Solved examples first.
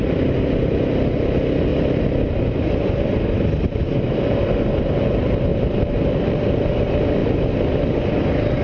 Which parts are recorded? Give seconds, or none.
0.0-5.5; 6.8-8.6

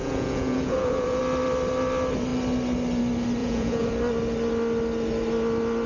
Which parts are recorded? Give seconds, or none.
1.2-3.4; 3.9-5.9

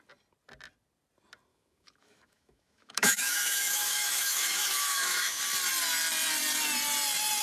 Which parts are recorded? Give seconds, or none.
0.0-1.5; 5.4-7.4

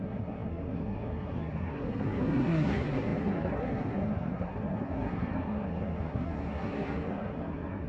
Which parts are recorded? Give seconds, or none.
none